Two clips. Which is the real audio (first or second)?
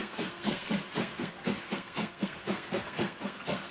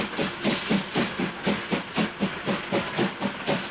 second